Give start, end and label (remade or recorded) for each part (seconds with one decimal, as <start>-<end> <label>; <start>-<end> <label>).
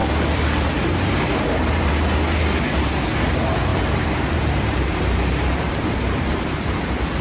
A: 0.0-1.9 remade; 1.9-3.7 recorded; 3.7-6.4 remade; 6.4-7.2 recorded